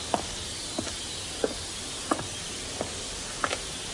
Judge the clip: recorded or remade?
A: recorded